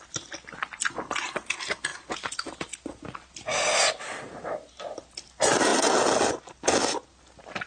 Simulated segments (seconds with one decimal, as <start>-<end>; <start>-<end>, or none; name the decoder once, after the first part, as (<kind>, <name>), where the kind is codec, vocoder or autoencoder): none